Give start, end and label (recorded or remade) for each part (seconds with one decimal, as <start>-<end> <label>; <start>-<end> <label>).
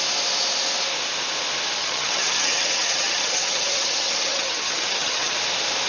0.0-1.8 recorded; 1.8-5.3 remade; 5.3-5.9 recorded